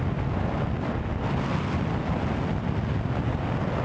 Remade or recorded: recorded